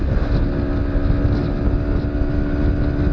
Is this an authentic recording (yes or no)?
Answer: yes